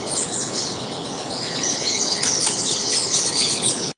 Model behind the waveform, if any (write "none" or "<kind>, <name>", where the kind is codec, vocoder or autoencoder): codec, HILCodec